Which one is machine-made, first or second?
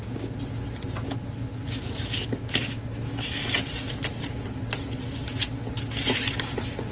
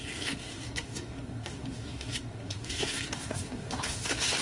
second